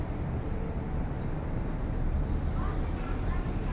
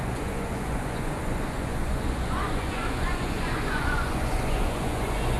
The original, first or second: first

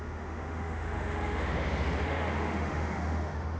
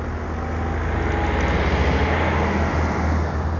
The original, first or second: second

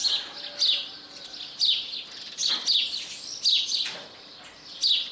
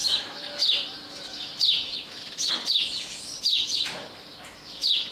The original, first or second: first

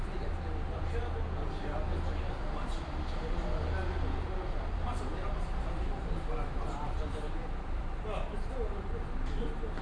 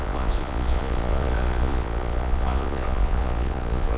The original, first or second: first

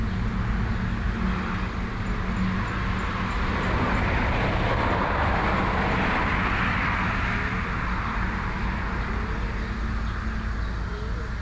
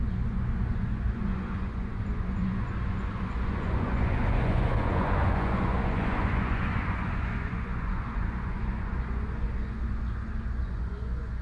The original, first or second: first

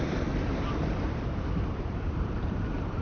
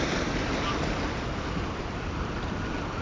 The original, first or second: second